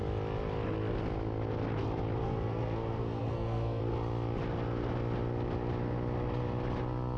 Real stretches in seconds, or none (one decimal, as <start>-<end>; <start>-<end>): 0.0-2.2; 3.8-7.2